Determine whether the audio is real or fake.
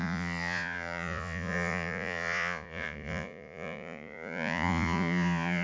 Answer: fake